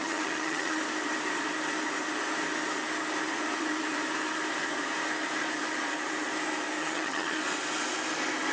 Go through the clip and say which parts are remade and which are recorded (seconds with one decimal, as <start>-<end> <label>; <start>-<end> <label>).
0.0-0.8 remade; 0.8-6.8 recorded; 6.8-7.4 remade; 7.4-8.5 recorded